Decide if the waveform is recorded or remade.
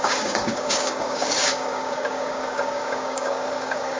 remade